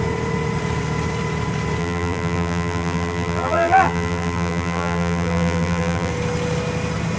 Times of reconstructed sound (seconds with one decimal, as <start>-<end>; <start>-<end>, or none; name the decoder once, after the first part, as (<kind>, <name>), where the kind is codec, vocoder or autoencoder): 1.8-6.1 (vocoder, BigVGAN v2)